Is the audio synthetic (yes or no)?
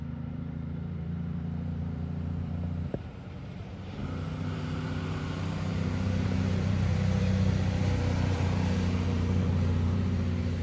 yes